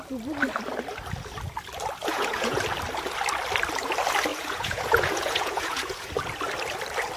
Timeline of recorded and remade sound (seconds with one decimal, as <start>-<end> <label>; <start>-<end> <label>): 0.0-2.0 recorded; 2.0-2.6 remade; 2.6-4.3 recorded; 4.3-6.1 remade; 6.1-7.2 recorded